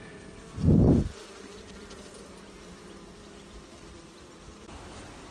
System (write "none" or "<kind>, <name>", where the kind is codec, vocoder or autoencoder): none